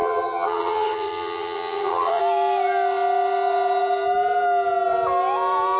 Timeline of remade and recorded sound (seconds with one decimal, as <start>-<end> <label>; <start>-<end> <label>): 0.0-2.2 remade; 2.2-5.8 recorded